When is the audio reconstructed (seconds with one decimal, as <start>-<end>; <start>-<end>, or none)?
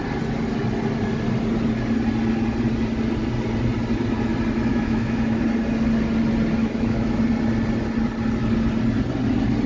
4.7-5.4; 6.6-7.2